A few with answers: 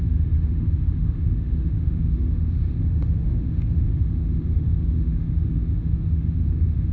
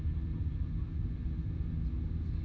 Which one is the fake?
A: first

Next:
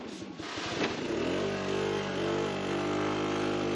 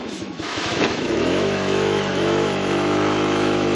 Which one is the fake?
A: second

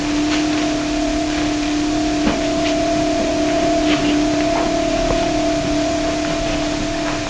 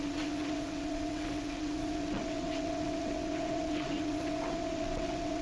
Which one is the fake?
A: second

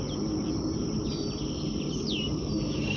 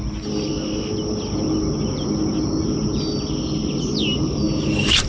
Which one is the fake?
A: first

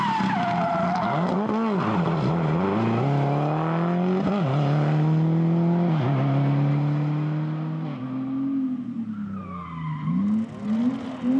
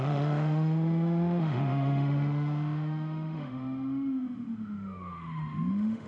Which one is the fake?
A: second